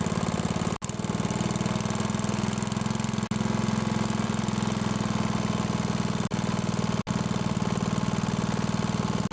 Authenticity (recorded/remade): recorded